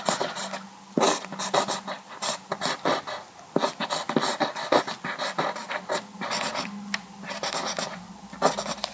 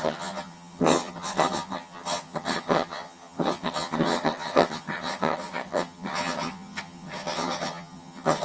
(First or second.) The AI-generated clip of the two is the second